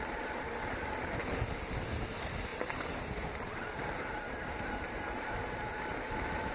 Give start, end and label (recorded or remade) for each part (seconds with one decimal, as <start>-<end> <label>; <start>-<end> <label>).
0.0-6.5 recorded